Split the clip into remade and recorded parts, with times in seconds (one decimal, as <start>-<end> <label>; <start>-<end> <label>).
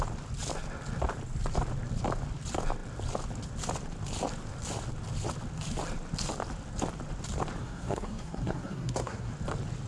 0.0-7.6 recorded; 7.6-9.3 remade; 9.3-9.9 recorded